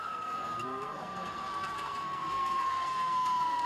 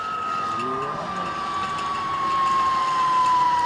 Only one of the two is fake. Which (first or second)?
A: first